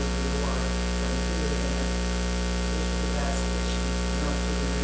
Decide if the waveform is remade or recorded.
recorded